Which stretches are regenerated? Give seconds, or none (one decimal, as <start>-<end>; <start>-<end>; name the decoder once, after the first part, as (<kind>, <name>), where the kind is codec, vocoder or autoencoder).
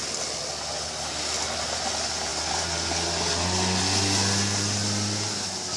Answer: none